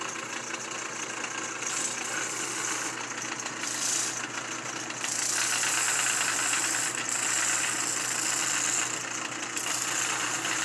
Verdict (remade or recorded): recorded